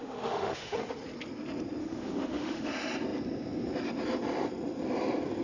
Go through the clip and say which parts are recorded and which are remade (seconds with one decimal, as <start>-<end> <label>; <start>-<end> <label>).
0.0-0.8 remade; 0.8-1.8 recorded; 1.8-2.7 remade; 2.7-5.4 recorded